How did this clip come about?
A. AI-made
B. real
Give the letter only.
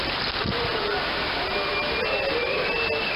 B